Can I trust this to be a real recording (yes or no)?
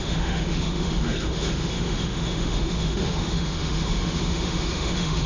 no